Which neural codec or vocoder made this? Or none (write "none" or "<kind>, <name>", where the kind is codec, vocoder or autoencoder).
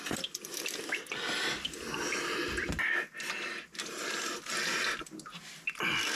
none